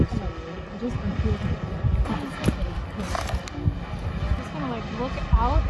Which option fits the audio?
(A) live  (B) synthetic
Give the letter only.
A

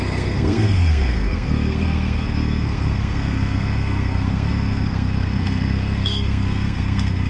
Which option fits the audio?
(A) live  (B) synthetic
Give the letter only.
B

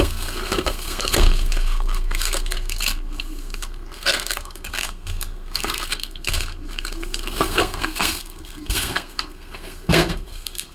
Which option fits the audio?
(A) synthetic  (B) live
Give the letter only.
A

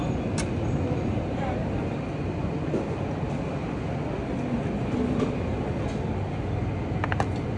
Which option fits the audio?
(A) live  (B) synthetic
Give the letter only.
A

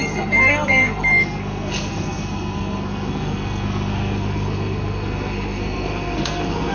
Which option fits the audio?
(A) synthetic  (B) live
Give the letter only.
A